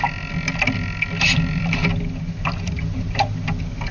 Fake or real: real